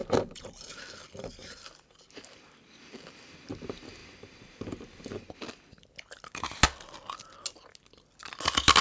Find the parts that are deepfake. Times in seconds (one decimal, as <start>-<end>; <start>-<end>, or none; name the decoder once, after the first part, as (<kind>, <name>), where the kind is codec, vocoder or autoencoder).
0.0-0.8 (vocoder, BigVGAN v2)